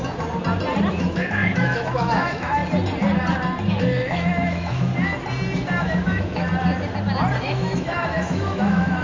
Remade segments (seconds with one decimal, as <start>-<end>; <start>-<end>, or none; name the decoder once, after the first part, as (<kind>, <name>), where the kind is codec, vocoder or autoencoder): 0.9-2.6 (autoencoder, DAC-VAE); 3.6-4.9; 5.8-6.5; 7.4-9.0